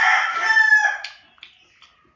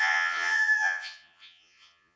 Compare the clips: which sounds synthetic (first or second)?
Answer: second